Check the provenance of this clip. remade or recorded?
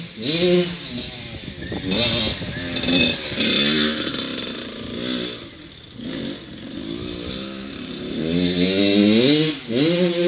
recorded